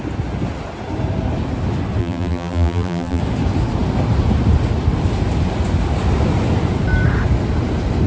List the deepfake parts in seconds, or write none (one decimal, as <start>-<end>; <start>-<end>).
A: 2.0-3.2